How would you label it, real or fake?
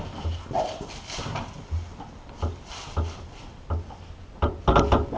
real